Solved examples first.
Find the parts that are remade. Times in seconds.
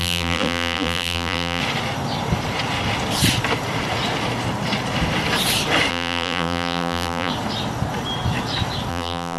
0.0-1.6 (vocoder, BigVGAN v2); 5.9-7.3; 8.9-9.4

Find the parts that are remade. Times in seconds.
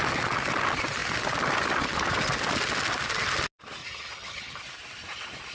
3.8-4.6 (vocoder, HiFi-GAN)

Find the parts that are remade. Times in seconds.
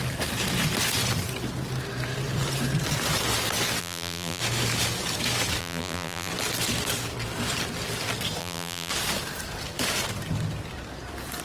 3.8-4.4 (vocoder, BigVGAN v2); 5.6-6.3; 8.4-8.9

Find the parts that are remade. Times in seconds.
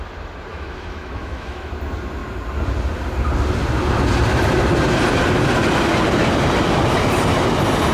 0.5-1.7 (autoencoder, DAC-VAE)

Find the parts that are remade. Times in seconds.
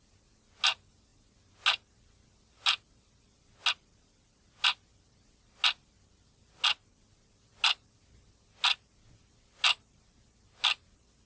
none